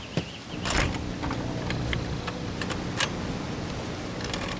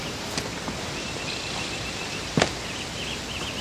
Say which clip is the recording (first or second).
first